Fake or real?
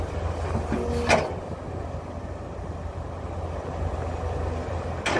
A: real